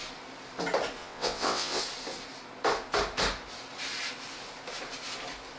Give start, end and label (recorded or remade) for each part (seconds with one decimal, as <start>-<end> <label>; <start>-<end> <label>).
0.0-1.0 recorded; 1.0-1.8 remade; 1.8-5.6 recorded